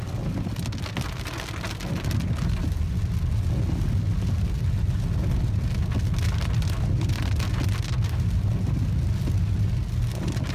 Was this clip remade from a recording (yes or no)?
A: no